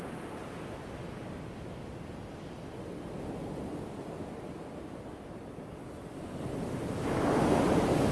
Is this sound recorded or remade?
recorded